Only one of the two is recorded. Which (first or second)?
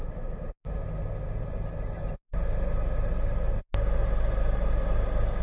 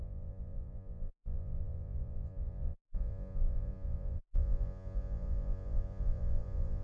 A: first